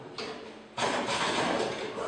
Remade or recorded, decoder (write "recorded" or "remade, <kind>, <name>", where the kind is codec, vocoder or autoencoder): recorded